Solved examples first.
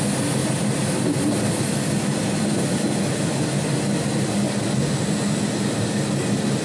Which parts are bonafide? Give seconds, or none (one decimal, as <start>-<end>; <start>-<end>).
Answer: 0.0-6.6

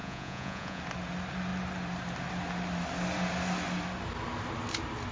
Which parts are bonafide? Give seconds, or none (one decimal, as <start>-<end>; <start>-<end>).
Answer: 0.8-5.1

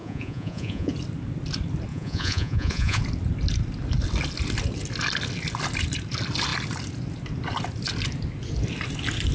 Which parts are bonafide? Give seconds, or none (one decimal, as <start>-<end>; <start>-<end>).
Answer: 0.9-1.9; 3.0-9.3

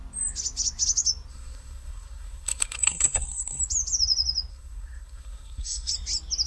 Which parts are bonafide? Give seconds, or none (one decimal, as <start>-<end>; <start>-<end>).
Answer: 0.0-1.3; 3.6-4.5; 5.9-6.5

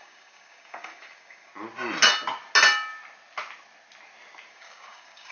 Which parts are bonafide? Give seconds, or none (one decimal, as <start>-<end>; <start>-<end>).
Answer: 1.5-4.5

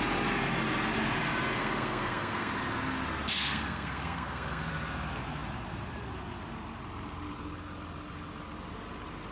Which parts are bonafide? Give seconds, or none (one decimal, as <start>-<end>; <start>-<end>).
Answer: 0.0-1.6; 2.5-3.3; 4.7-9.3

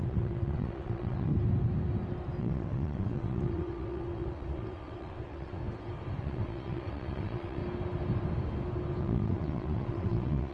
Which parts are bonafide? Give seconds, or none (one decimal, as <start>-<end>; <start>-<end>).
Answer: 1.3-2.4; 5.6-6.2; 7.6-9.0

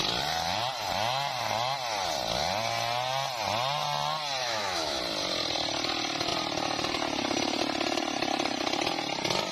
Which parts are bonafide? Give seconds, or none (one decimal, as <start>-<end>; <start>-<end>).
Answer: 0.0-4.4; 5.0-9.5